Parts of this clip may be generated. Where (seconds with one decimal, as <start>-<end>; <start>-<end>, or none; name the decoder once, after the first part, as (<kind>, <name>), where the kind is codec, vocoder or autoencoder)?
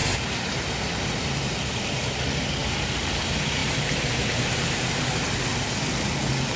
0.0-0.5 (vocoder, BigVGAN v2); 2.6-3.2; 3.6-5.0